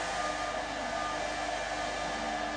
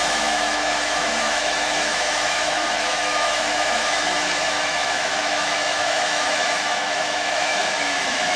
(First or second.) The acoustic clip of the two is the first